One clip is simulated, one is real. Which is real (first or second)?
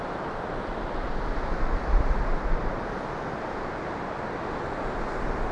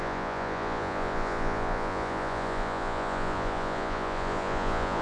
first